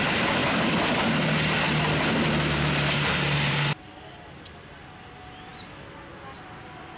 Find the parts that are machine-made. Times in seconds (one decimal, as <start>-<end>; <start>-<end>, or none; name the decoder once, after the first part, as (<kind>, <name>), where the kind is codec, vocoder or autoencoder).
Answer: none